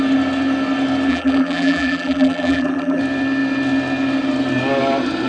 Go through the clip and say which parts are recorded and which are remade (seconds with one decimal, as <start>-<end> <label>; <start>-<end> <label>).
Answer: 0.0-1.1 recorded; 1.1-3.0 remade; 3.0-5.3 recorded